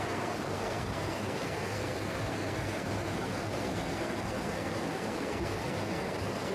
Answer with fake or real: fake